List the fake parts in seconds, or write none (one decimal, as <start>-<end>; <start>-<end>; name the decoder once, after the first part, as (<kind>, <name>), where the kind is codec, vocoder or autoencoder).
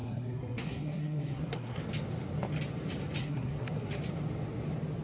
0.0-1.8 (codec, SNAC); 3.2-4.0